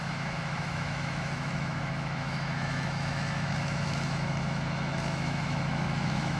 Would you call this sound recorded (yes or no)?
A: no